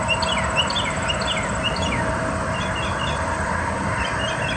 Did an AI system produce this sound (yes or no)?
no